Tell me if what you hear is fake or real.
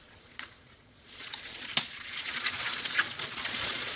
fake